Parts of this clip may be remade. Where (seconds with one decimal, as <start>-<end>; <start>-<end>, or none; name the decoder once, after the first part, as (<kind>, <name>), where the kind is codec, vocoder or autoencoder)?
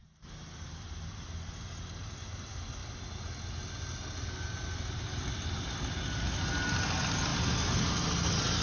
none